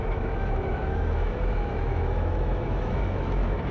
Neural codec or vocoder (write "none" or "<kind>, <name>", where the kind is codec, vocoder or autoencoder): autoencoder, DAC-VAE